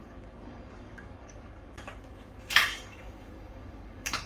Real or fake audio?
fake